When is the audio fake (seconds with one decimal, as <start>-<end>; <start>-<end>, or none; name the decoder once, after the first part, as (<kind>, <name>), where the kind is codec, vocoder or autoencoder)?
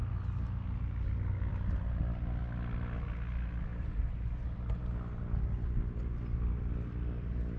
3.7-4.8 (vocoder, BigVGAN v2)